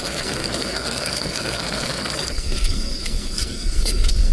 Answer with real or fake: fake